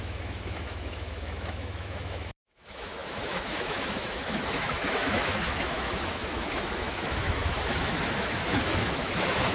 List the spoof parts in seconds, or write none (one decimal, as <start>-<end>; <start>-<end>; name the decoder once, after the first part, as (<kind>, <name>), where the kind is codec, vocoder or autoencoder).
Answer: 0.0-9.5 (autoencoder, DAC-VAE)